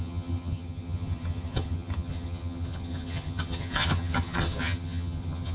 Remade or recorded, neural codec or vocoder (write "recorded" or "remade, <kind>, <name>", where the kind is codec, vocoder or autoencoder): remade, vocoder, HiFi-GAN